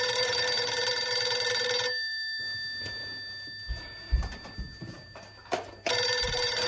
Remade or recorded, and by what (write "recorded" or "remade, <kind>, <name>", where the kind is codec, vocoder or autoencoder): remade, vocoder, BigVGAN v2